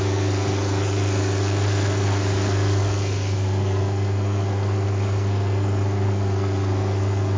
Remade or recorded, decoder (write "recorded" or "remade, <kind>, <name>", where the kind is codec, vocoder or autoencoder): remade, codec, SNAC